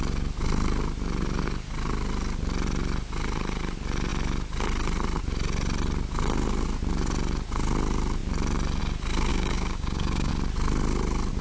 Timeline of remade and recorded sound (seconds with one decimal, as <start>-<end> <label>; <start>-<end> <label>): 0.0-9.3 recorded; 9.3-10.3 remade; 10.3-11.4 recorded